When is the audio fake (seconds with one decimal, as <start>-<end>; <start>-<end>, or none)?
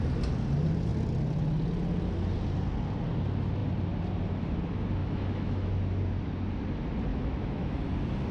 5.0-5.7; 7.1-7.8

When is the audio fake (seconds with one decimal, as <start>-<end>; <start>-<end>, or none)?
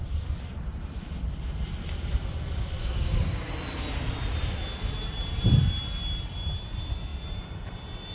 2.8-3.5